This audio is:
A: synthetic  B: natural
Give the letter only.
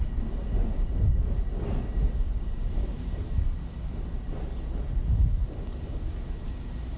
B